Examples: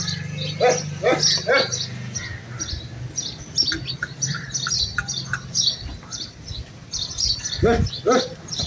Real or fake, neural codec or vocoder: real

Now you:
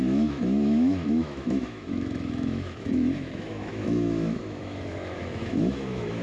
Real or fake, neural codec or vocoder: fake, autoencoder, DAC-VAE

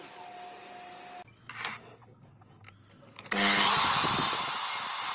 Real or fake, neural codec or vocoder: real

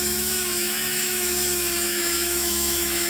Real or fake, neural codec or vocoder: fake, autoencoder, DAC-VAE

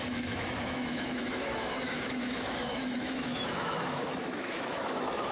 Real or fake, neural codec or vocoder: fake, autoencoder, DAC-VAE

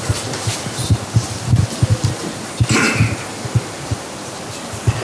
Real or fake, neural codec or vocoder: real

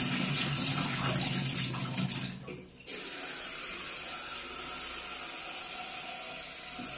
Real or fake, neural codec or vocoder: real